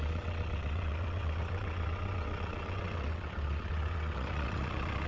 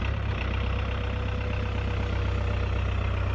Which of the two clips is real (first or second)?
second